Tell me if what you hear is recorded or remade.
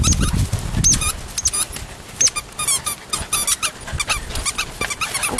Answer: recorded